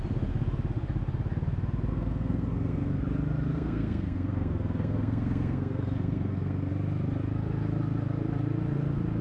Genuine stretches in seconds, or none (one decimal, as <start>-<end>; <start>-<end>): 0.0-1.9; 3.0-3.5; 6.7-9.2